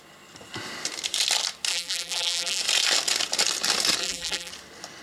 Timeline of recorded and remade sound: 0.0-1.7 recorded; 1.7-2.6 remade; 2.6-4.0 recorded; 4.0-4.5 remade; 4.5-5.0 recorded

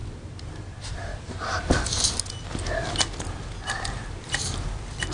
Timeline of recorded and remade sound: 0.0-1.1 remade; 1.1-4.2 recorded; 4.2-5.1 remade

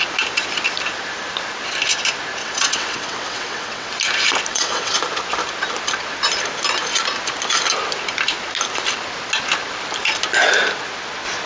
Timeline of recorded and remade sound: 0.0-2.4 recorded; 2.4-3.9 remade; 3.9-4.5 recorded; 4.5-5.0 remade; 5.0-11.5 recorded

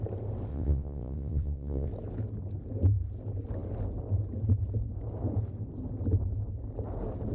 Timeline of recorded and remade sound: 0.0-0.5 recorded; 0.5-1.9 remade; 1.9-7.3 recorded

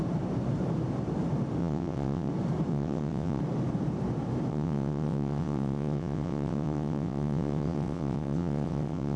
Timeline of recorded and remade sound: 0.0-1.6 recorded; 1.6-2.3 remade; 2.3-2.7 recorded; 2.7-3.4 remade; 3.4-4.5 recorded; 4.5-9.2 remade